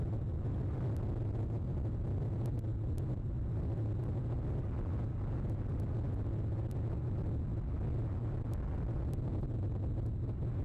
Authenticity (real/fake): real